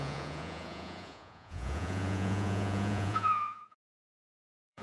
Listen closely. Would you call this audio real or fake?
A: fake